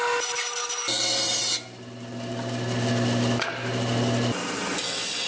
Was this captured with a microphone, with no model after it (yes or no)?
yes